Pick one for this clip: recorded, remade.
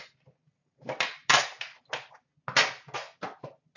recorded